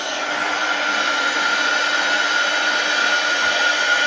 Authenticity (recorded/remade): remade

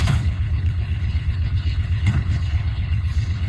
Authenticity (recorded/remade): remade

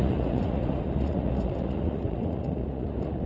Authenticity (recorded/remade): remade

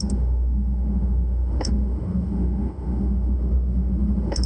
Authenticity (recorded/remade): remade